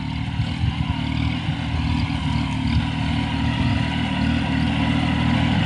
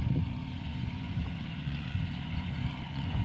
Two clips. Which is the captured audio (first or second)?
first